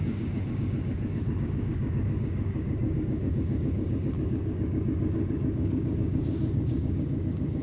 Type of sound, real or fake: fake